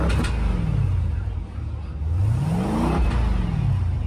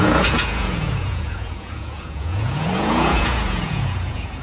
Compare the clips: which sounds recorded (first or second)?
first